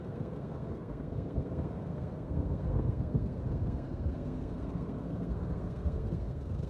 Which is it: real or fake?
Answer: fake